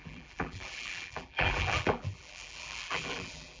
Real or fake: fake